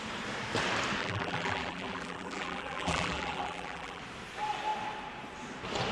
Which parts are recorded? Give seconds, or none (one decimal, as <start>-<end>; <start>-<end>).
0.0-1.0; 4.0-5.9